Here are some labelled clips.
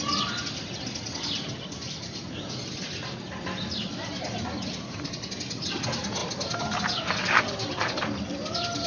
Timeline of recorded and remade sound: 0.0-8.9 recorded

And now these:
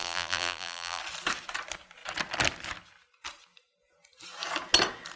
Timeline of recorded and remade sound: 0.0-1.0 remade; 1.0-5.2 recorded

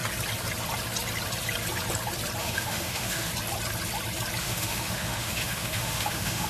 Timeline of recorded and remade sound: 0.0-2.4 recorded; 2.4-3.3 remade; 3.3-4.4 recorded; 4.4-6.5 remade

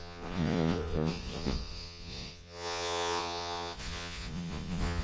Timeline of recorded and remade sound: 0.0-5.0 remade

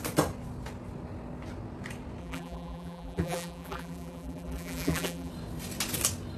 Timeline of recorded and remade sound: 0.0-2.2 recorded; 2.2-5.3 remade; 5.3-6.4 recorded